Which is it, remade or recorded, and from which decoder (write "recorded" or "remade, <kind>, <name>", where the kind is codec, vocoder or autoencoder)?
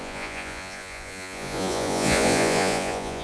remade, vocoder, Vocos